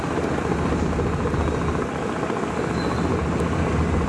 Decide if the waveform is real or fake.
real